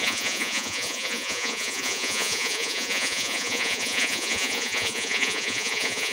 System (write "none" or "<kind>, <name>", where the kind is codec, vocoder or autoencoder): vocoder, Vocos